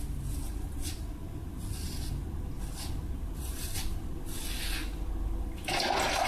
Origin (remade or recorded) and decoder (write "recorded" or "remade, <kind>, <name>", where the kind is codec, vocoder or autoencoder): recorded